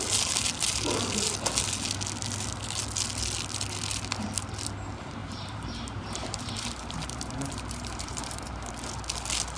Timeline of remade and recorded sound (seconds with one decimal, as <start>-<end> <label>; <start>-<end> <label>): 0.0-5.2 recorded; 5.2-8.7 remade; 8.7-9.6 recorded